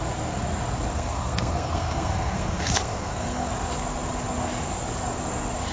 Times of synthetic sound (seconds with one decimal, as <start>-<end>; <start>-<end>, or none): 0.9-3.5